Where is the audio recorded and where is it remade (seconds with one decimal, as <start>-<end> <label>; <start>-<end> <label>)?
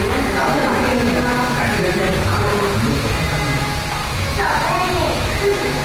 0.0-4.0 recorded; 4.0-5.8 remade